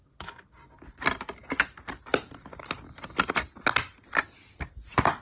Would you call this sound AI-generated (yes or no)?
no